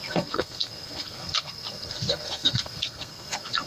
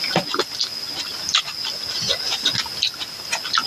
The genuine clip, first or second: second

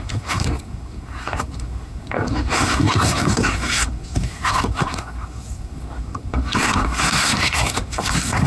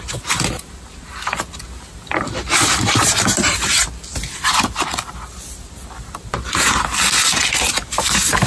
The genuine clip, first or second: second